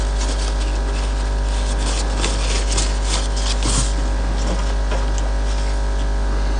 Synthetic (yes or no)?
no